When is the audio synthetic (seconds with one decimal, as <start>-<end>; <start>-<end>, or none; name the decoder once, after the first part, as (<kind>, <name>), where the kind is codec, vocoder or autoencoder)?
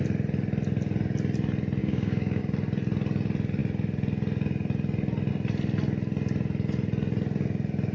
1.8-2.4 (codec, DAC)